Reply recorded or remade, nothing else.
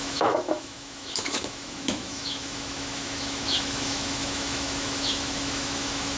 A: remade